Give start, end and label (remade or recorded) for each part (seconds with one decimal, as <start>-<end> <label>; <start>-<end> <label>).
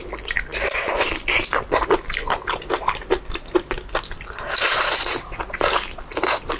0.0-6.6 recorded